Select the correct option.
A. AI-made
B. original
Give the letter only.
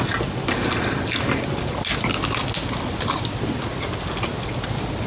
B